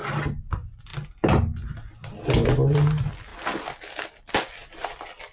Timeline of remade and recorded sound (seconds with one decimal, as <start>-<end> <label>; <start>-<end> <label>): 0.0-5.3 recorded